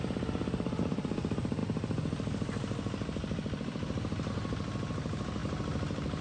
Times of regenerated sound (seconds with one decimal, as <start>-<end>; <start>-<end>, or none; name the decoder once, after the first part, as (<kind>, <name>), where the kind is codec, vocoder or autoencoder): none